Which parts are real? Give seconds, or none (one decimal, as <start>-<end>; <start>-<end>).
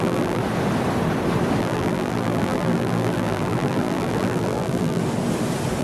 0.4-1.6; 5.0-5.8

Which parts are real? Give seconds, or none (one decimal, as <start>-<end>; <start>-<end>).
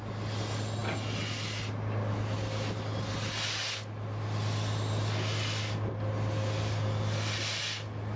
0.0-8.2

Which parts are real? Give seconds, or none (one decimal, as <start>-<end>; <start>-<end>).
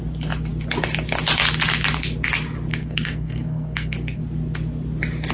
0.0-2.7; 4.2-5.3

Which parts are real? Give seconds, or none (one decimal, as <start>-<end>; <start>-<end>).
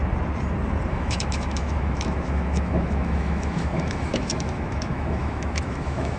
0.0-0.9